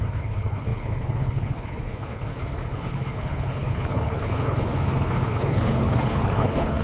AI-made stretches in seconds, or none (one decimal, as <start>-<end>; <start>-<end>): 0.0-6.8